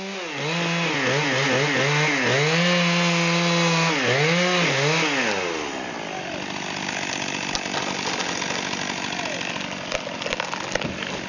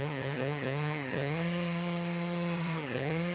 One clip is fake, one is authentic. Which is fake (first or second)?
second